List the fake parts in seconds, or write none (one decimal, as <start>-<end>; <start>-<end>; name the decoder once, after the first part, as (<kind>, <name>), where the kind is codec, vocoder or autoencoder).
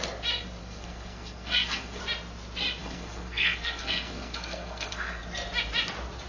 0.6-2.0 (codec, SNAC); 2.8-5.2